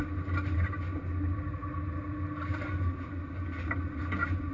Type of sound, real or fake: real